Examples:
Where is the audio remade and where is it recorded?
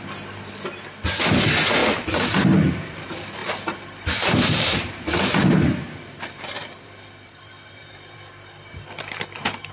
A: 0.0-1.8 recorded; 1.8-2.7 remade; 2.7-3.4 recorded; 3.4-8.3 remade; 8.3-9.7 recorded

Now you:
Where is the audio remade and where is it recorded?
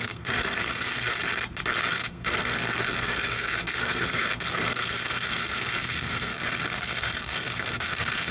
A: 0.0-1.2 remade; 1.2-1.9 recorded; 1.9-8.3 remade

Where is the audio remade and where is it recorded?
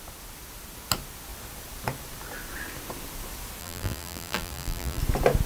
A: 0.0-3.6 recorded; 3.6-5.0 remade; 5.0-5.5 recorded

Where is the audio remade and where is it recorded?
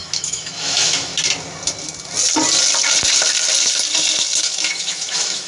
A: 0.0-1.1 remade; 1.1-4.4 recorded; 4.4-5.5 remade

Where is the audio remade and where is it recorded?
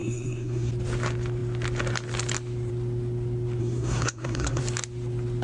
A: 0.0-0.7 remade; 0.7-3.6 recorded; 3.6-4.6 remade; 4.6-5.4 recorded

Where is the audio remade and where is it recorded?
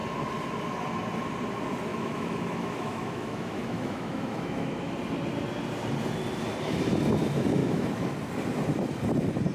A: 0.0-1.9 recorded; 1.9-4.9 remade; 4.9-7.6 recorded; 7.6-8.1 remade; 8.1-9.5 recorded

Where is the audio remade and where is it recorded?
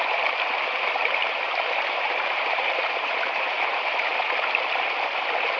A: 0.0-1.0 recorded; 1.0-4.1 remade; 4.1-5.6 recorded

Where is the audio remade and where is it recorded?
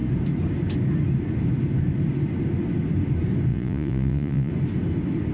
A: 0.0-3.5 recorded; 3.5-4.5 remade; 4.5-5.3 recorded